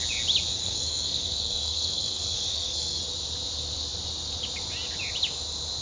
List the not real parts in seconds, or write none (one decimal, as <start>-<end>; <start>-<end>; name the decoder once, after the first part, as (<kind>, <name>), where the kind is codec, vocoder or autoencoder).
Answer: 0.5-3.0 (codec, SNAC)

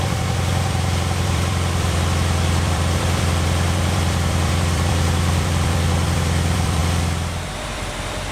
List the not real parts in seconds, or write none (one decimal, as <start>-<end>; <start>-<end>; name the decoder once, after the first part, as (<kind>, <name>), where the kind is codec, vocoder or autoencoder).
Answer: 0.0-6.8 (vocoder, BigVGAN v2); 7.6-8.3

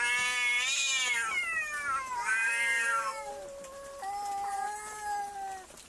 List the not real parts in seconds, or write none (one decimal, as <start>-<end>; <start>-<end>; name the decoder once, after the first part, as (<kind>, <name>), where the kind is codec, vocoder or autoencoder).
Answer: 2.3-3.3 (codec, DAC)

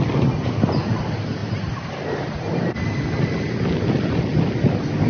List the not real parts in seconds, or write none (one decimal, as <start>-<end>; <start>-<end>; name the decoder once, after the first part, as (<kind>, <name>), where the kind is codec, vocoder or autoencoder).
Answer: none

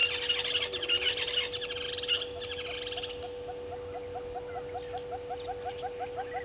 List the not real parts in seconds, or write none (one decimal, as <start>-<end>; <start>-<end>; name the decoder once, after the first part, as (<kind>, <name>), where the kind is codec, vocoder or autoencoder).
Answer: none

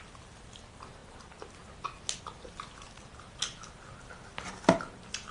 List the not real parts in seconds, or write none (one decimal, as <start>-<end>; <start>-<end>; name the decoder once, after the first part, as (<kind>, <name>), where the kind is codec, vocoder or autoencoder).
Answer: none